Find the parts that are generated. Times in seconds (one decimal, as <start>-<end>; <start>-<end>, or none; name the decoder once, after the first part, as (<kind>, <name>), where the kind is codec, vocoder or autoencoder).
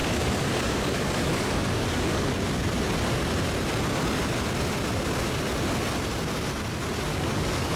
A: 0.0-2.3 (codec, DAC); 7.1-7.8